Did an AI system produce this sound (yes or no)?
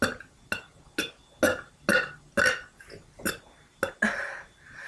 no